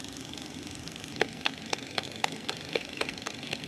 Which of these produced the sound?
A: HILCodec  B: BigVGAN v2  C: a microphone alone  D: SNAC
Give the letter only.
D